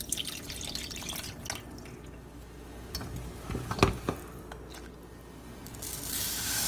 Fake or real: real